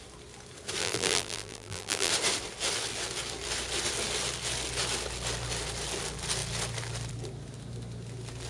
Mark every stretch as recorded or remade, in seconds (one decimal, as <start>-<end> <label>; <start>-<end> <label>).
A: 0.0-0.8 recorded; 0.8-2.1 remade; 2.1-8.5 recorded